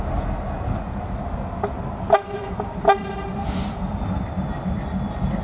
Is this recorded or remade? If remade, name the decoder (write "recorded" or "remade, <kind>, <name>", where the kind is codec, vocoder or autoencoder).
recorded